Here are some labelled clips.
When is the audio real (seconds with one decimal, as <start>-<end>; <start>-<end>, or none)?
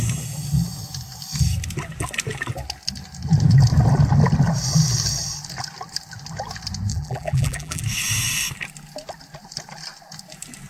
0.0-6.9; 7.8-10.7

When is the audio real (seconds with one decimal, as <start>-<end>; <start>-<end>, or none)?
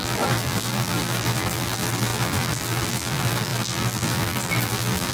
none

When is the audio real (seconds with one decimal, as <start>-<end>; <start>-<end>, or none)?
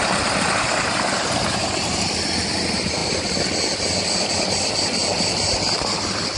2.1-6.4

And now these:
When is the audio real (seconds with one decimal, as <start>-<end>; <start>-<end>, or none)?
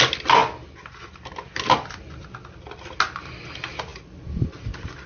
0.0-5.1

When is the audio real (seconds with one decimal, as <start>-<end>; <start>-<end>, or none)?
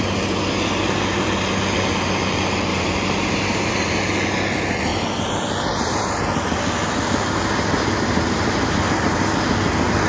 0.0-2.7; 3.7-7.2; 9.5-10.1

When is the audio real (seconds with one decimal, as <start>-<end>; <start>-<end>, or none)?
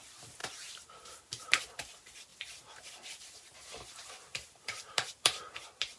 0.0-0.4; 1.6-2.3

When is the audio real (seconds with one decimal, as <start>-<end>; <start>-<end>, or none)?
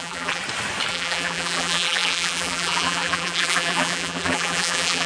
0.4-0.9